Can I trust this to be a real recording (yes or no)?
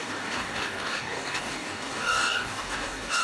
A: no